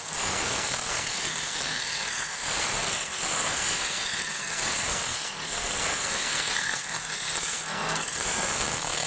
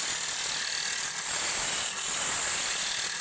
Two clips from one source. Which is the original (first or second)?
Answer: second